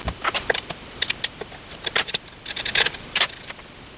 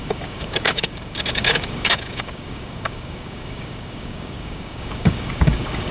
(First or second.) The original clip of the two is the first